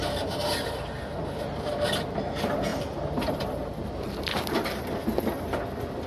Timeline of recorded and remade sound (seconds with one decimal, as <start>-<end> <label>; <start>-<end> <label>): 0.0-2.7 recorded; 2.7-4.9 remade; 4.9-6.1 recorded